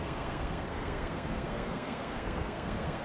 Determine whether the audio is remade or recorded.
remade